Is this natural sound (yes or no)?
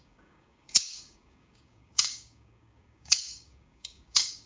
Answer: no